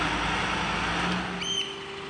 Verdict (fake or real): real